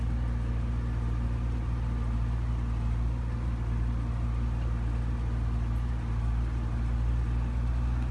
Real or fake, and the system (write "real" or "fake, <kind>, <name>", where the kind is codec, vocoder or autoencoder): real